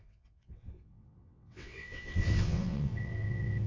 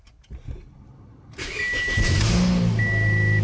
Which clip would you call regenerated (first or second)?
first